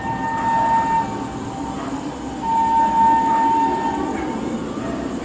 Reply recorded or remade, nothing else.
recorded